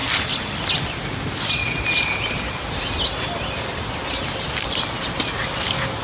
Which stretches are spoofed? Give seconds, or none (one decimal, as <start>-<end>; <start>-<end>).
none